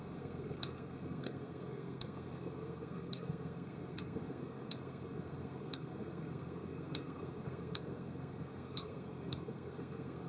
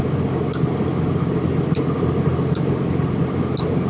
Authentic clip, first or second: second